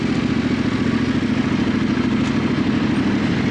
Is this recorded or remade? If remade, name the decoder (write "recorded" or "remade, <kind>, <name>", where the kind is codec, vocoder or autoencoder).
recorded